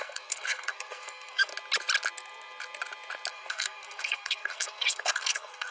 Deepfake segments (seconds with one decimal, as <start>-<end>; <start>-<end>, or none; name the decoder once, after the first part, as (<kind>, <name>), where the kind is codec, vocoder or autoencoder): 0.0-1.5 (codec, SNAC); 3.3-5.7